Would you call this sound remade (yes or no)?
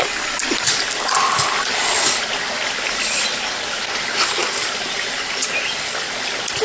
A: no